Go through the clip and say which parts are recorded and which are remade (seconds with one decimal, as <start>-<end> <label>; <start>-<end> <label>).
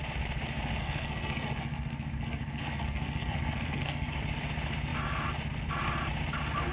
0.0-0.8 recorded; 0.8-4.2 remade; 4.2-6.7 recorded